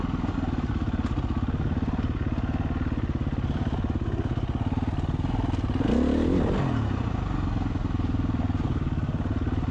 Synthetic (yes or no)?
no